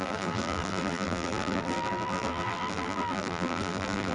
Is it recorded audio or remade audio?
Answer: remade